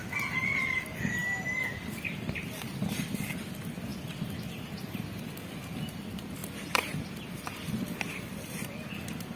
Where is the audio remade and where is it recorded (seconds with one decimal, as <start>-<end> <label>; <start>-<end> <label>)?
0.0-6.4 recorded; 6.4-8.2 remade; 8.2-9.4 recorded